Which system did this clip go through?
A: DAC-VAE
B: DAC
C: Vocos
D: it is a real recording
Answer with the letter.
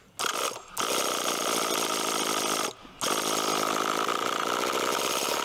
D